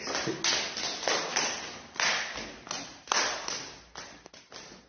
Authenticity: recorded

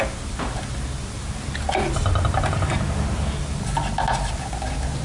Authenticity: recorded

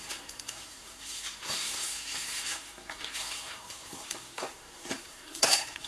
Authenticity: remade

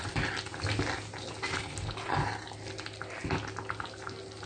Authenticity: recorded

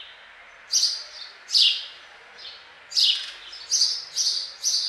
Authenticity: recorded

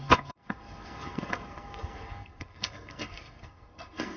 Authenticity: remade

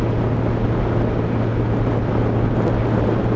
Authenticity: recorded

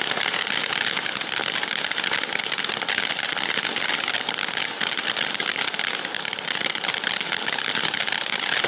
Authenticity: recorded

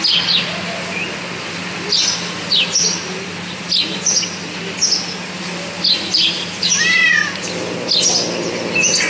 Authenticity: recorded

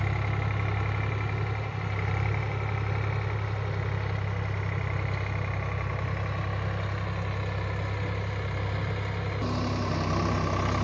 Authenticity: recorded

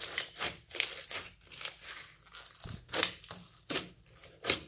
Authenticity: recorded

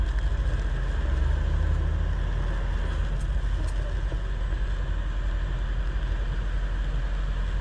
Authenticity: recorded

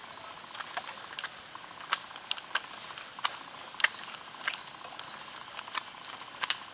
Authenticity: recorded